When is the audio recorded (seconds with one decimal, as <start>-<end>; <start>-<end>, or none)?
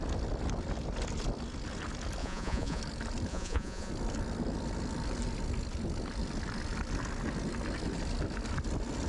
0.0-2.2; 2.8-3.3; 3.9-9.1